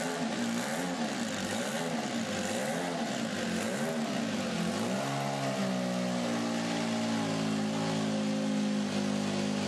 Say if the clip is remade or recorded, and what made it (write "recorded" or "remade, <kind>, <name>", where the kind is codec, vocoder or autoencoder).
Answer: recorded